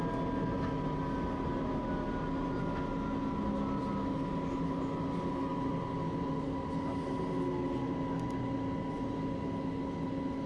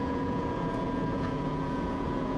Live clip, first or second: first